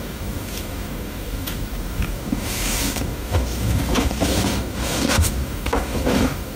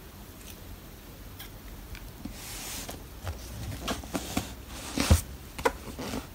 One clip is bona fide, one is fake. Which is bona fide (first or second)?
second